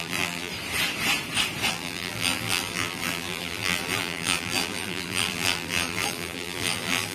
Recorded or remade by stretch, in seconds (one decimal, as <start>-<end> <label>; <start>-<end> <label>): 0.0-0.5 remade; 0.5-1.7 recorded; 1.7-7.1 remade